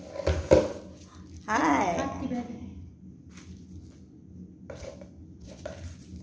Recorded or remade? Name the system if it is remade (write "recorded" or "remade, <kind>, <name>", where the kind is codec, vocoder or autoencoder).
recorded